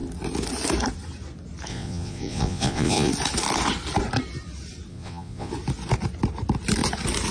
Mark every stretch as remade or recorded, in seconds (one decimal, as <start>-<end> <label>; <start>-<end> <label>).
0.0-1.7 recorded; 1.7-3.1 remade; 3.1-4.9 recorded; 4.9-5.5 remade; 5.5-7.3 recorded